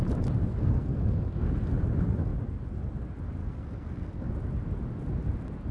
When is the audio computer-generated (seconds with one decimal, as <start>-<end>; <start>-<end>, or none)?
0.5-1.5; 3.4-4.3